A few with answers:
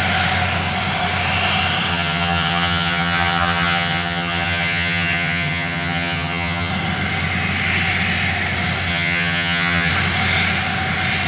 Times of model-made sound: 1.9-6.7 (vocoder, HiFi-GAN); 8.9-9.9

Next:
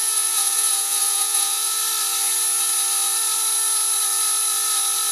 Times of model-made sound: 0.0-1.8 (vocoder, Vocos)

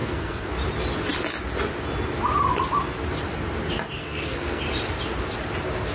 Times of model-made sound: 0.0-0.5 (codec, SNAC); 4.0-4.6

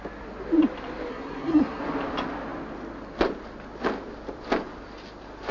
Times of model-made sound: 1.1-1.8 (codec, SNAC)

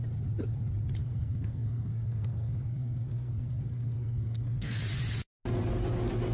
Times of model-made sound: 1.0-4.8 (codec, SNAC)

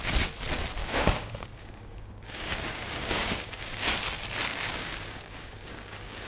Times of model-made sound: 0.8-3.9 (codec, DAC); 4.5-6.3

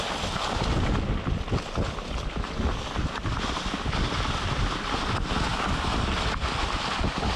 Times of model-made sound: 5.5-6.2 (vocoder, BigVGAN v2)

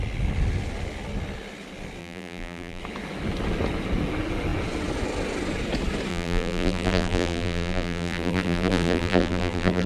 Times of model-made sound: 2.0-2.8 (vocoder, BigVGAN v2); 6.1-9.9